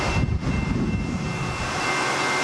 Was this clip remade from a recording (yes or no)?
no